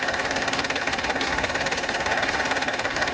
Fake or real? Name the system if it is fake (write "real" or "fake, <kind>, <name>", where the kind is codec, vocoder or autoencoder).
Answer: fake, codec, SNAC